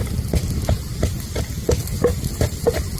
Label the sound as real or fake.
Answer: real